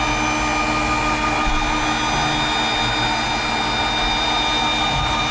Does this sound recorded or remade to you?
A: recorded